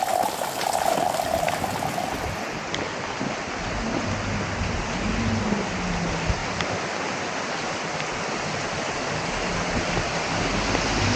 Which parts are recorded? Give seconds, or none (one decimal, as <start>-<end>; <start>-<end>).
0.0-6.4; 10.2-11.2